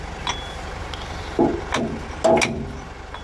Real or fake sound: real